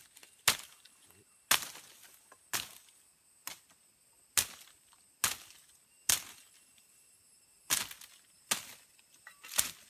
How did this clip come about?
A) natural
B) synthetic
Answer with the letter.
A